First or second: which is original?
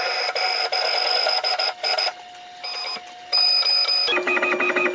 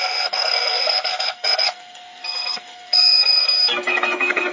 first